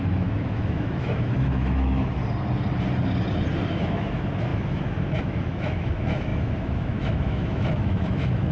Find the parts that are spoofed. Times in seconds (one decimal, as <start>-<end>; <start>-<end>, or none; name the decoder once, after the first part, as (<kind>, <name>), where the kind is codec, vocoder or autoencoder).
0.0-2.2 (autoencoder, DAC-VAE); 3.7-8.5